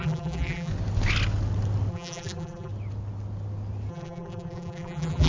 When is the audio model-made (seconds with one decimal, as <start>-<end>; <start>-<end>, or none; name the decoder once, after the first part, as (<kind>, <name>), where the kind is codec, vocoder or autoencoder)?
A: 0.0-0.7 (vocoder, BigVGAN v2); 1.9-2.7; 3.9-5.3